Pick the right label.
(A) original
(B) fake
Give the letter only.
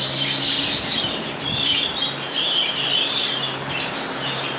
B